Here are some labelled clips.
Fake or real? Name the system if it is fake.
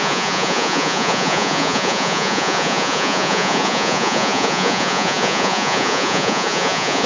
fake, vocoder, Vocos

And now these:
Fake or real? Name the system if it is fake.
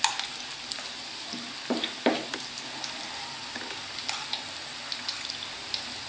real